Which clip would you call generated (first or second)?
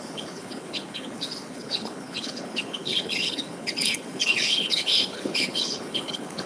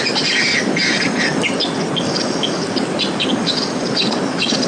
first